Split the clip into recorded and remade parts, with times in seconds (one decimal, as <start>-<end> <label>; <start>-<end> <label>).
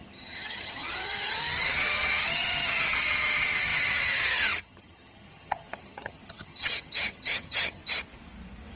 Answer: 0.0-7.8 remade; 7.8-8.8 recorded